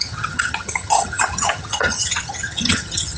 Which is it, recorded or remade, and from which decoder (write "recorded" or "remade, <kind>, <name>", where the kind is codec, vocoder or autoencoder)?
remade, vocoder, HiFi-GAN